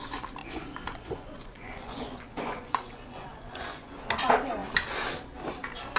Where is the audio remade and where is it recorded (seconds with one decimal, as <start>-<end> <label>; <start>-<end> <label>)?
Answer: 0.0-0.4 recorded; 0.4-3.9 remade; 3.9-6.0 recorded